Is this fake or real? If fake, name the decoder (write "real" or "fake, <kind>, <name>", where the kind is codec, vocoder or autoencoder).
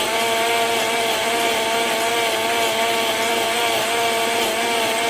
real